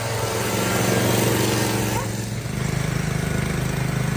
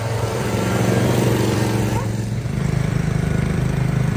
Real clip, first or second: first